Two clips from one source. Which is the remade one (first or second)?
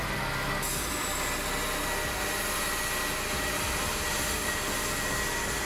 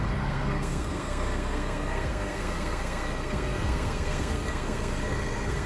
second